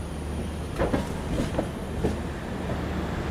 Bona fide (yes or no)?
yes